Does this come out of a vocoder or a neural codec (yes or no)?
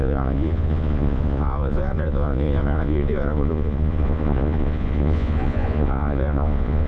yes